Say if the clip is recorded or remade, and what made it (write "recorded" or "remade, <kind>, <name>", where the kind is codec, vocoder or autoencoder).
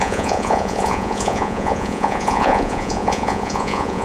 remade, vocoder, Vocos